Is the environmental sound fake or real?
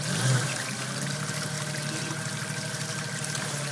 real